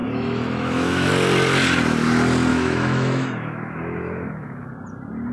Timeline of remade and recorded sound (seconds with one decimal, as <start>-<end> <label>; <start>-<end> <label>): 0.0-1.1 remade; 1.1-2.5 recorded; 2.5-4.7 remade; 4.7-5.3 recorded

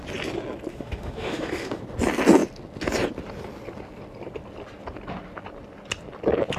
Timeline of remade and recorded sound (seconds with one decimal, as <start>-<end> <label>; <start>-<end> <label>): 0.0-0.7 recorded; 0.7-1.8 remade; 1.8-6.6 recorded

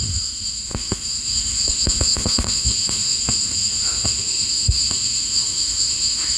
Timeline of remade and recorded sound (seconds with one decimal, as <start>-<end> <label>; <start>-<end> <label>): 0.0-6.4 remade

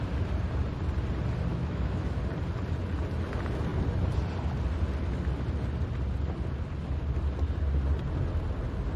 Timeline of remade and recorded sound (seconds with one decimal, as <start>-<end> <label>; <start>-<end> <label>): 0.0-1.5 recorded; 1.5-2.2 remade; 2.2-9.0 recorded

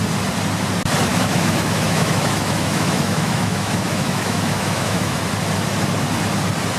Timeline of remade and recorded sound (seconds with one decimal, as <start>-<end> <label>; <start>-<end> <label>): 0.0-1.1 recorded; 1.1-5.2 remade; 5.2-6.8 recorded